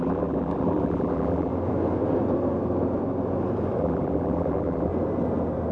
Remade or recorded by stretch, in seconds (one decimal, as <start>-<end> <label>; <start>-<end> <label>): 0.0-1.5 remade; 1.5-3.8 recorded; 3.8-4.9 remade; 4.9-5.7 recorded